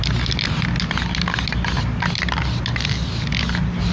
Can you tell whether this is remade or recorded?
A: recorded